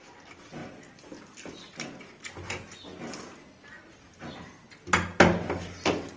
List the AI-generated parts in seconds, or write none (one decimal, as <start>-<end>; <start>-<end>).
none